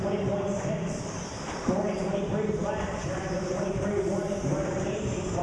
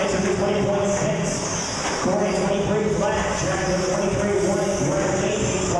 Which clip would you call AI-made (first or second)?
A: first